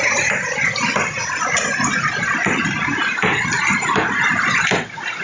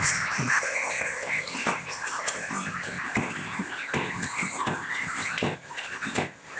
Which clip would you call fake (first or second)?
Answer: second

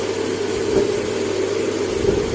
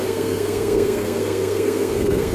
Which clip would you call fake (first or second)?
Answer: second